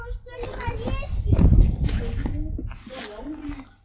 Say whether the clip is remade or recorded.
recorded